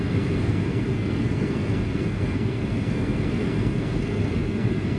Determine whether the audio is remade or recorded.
remade